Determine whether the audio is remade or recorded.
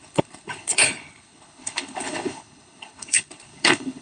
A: remade